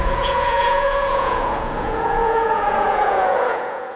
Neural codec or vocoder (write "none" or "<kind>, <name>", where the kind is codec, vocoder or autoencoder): vocoder, Vocos